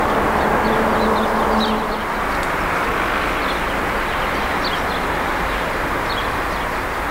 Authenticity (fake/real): real